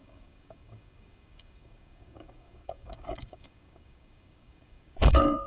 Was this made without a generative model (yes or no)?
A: no